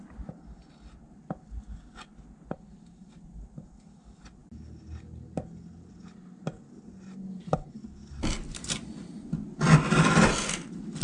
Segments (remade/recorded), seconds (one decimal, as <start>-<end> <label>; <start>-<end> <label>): 0.0-11.0 recorded